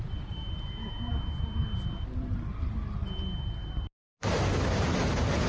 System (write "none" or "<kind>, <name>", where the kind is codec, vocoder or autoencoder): none